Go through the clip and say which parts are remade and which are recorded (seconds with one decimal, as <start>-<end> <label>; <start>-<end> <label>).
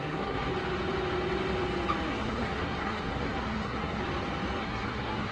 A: 0.0-0.5 remade; 0.5-2.1 recorded; 2.1-4.0 remade; 4.0-4.6 recorded; 4.6-5.3 remade